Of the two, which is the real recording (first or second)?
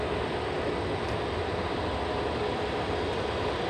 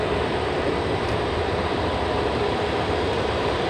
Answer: first